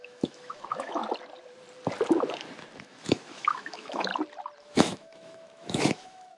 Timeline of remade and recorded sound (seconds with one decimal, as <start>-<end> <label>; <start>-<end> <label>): 0.0-1.0 remade; 1.0-2.8 recorded; 2.8-4.1 remade; 4.1-4.6 recorded; 4.6-6.4 remade